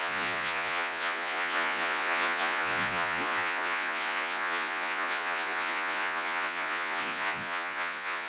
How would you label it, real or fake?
fake